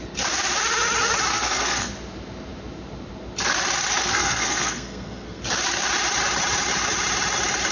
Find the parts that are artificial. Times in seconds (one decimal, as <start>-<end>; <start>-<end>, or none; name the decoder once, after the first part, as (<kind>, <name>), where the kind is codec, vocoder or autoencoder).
1.3-1.9 (codec, SNAC); 4.0-5.4